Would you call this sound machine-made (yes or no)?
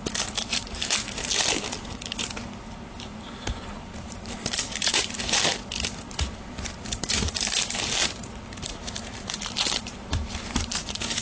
yes